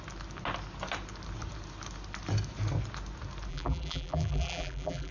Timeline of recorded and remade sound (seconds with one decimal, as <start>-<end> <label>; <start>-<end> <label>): 0.0-3.5 recorded; 3.5-5.1 remade